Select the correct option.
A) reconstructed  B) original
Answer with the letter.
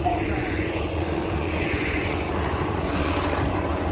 A